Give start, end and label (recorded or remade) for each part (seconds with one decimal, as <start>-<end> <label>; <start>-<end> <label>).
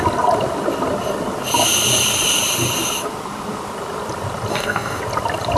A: 0.0-4.5 recorded; 4.5-5.0 remade; 5.0-5.6 recorded